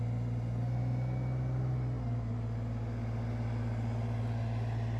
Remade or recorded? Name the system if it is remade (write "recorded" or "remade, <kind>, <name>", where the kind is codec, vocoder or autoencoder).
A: recorded